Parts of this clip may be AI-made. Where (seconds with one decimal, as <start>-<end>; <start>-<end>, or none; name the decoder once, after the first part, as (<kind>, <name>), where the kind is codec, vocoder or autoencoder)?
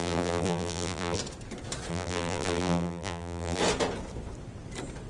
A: 0.0-1.2 (vocoder, BigVGAN v2); 1.9-3.6